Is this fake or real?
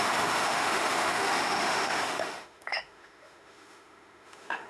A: fake